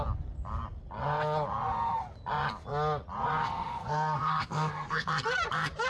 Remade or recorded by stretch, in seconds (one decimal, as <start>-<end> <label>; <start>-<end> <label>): 0.0-3.4 recorded; 3.4-5.1 remade; 5.1-5.9 recorded